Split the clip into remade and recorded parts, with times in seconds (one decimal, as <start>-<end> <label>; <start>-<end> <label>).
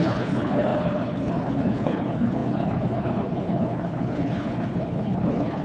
0.0-5.6 remade